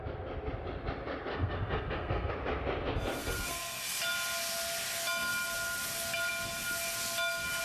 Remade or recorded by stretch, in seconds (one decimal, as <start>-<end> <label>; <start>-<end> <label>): 0.0-1.3 recorded; 1.3-2.3 remade; 2.3-3.2 recorded; 3.2-4.0 remade; 4.0-7.6 recorded

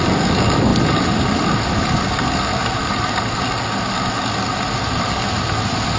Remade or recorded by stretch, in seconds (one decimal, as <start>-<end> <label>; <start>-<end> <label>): 0.0-6.0 recorded